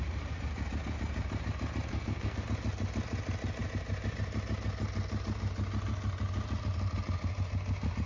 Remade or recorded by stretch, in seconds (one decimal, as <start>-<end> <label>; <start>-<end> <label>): 0.0-1.9 recorded; 1.9-2.4 remade; 2.4-8.1 recorded